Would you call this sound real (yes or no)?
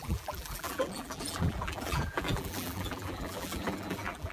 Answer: no